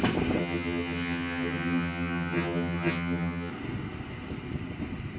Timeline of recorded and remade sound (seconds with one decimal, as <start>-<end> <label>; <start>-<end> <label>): 0.0-0.4 recorded; 0.4-3.5 remade; 3.5-5.2 recorded